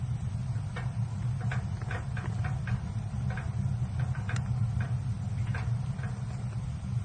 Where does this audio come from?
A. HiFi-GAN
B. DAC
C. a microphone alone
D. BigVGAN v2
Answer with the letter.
C